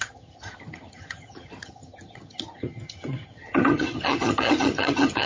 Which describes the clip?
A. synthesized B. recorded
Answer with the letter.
A